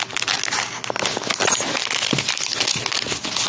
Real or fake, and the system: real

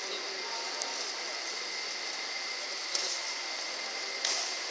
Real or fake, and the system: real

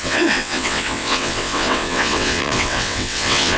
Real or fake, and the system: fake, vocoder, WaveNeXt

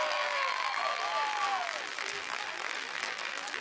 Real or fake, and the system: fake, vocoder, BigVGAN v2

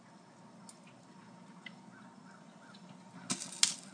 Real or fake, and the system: real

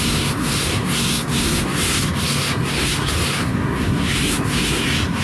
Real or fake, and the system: fake, codec, SNAC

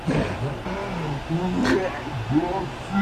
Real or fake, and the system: real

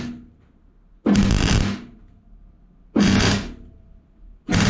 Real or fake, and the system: real